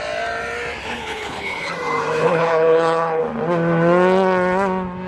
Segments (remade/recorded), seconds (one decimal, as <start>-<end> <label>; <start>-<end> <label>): 0.0-0.8 recorded; 0.8-1.7 remade; 1.7-2.3 recorded; 2.3-3.2 remade; 3.2-5.1 recorded

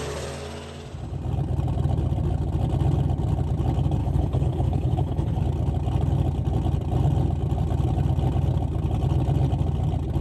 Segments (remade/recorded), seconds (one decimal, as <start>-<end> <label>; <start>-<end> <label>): 0.0-4.0 recorded; 4.0-5.4 remade; 5.4-10.2 recorded